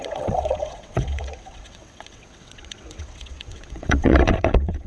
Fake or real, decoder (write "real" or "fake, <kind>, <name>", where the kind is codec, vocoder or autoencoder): fake, vocoder, WaveNeXt